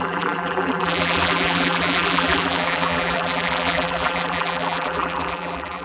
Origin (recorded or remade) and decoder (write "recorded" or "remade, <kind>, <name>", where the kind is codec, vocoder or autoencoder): remade, vocoder, BigVGAN v2